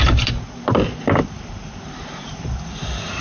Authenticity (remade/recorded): recorded